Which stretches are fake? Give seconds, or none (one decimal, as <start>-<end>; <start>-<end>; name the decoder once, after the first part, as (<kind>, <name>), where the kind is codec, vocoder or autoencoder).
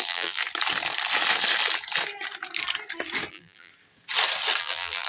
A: 0.0-0.4 (vocoder, BigVGAN v2); 3.3-3.7; 4.6-5.1